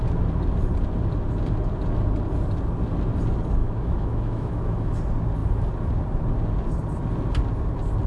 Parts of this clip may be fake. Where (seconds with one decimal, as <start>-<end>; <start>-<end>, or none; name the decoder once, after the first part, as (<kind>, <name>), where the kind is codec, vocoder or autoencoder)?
3.6-4.9 (autoencoder, DAC-VAE)